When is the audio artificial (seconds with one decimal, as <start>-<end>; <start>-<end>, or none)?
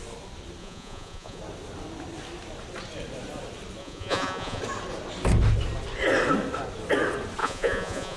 0.6-1.4; 3.8-4.6; 7.4-8.2